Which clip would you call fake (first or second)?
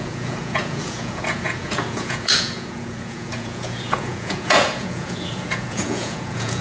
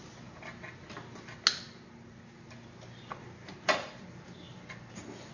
first